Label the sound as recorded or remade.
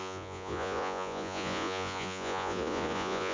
remade